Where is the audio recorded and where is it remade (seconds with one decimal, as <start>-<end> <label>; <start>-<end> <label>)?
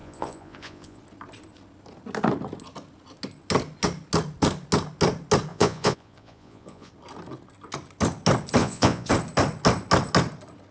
0.0-1.0 remade; 1.0-5.5 recorded; 5.5-6.9 remade; 6.9-8.6 recorded; 8.6-9.1 remade; 9.1-10.7 recorded